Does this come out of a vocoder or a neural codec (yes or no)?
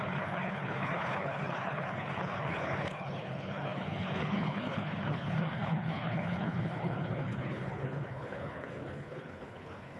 yes